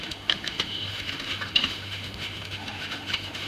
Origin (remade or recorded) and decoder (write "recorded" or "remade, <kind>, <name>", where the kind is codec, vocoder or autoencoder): remade, autoencoder, DAC-VAE